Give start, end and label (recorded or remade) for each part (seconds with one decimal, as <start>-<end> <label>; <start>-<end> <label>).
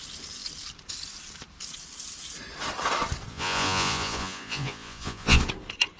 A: 0.0-3.3 recorded; 3.3-5.4 remade; 5.4-6.0 recorded